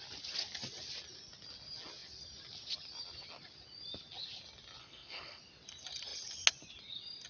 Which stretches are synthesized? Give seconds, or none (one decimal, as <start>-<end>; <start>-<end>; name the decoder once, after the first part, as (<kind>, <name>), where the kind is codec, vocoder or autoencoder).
4.8-5.4 (codec, SNAC)